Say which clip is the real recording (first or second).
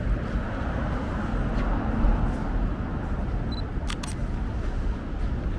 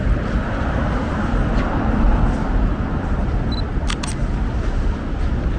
first